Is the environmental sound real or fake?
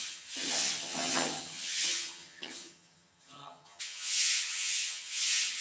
fake